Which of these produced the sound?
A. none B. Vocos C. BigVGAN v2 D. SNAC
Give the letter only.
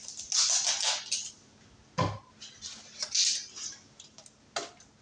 A